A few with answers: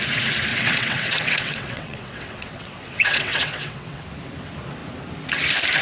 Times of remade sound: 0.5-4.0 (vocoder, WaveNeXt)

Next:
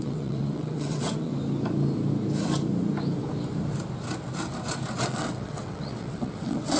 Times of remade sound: 0.0-1.3 (vocoder, WaveNeXt); 5.0-6.8

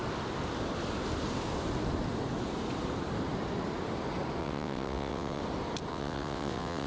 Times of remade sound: 4.4-5.4 (vocoder, WaveNeXt); 5.9-6.9

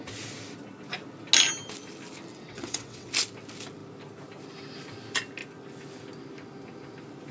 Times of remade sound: 2.3-3.1 (vocoder, WaveNeXt)

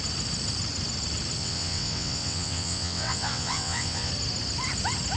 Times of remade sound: 1.4-4.1 (vocoder, WaveNeXt)

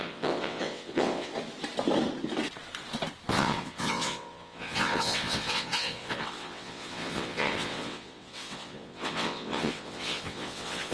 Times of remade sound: 0.0-1.3 (vocoder, WaveNeXt); 3.3-10.9

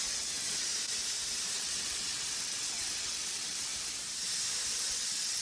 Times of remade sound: 0.0-0.7 (vocoder, WaveNeXt); 1.5-3.7; 4.7-5.4

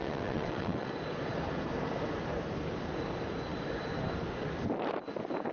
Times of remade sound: 0.0-0.9 (vocoder, WaveNeXt)